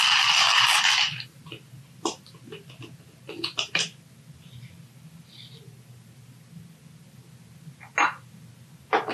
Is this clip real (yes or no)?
yes